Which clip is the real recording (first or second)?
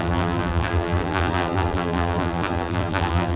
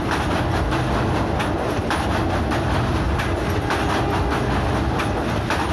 second